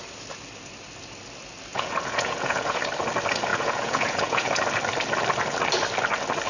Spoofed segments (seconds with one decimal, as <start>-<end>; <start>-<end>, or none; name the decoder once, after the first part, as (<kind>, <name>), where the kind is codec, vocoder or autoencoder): 1.7-2.8 (vocoder, Vocos); 3.5-4.5

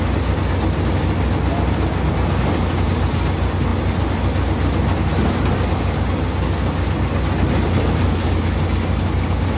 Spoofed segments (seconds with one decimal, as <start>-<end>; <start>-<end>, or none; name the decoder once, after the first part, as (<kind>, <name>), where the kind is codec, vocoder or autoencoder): none

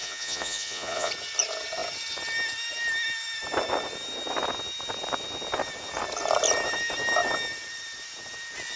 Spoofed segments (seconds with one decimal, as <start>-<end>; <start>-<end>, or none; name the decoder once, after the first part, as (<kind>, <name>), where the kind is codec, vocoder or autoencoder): 0.0-1.1 (vocoder, Vocos)

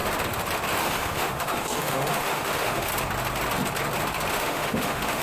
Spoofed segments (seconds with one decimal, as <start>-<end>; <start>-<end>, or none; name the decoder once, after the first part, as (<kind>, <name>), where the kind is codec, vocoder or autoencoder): 0.8-2.9 (autoencoder, DAC-VAE); 4.3-5.2

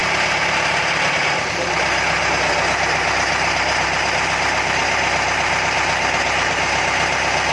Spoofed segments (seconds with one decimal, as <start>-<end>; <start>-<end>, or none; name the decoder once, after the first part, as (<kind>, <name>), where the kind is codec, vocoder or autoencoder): none

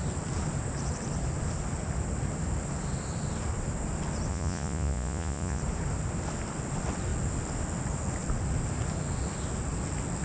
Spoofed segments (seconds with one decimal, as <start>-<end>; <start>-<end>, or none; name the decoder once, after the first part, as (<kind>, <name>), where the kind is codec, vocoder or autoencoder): 4.3-5.6 (vocoder, Vocos)

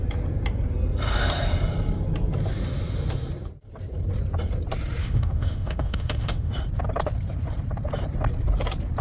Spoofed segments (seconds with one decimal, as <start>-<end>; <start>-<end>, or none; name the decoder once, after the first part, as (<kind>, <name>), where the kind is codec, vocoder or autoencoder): 5.0-6.5 (autoencoder, DAC-VAE)

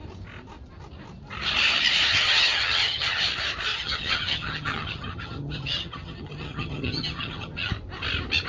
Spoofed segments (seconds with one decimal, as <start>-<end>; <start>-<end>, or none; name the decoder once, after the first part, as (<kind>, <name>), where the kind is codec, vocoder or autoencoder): 2.1-3.2 (vocoder, HiFi-GAN); 3.7-7.7